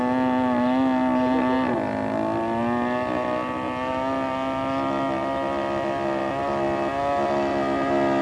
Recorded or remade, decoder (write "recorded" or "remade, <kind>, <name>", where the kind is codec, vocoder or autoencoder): recorded